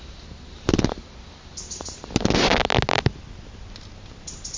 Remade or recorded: recorded